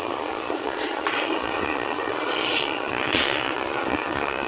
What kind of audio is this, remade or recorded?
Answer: remade